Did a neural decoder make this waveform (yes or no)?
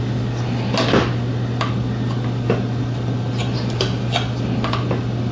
no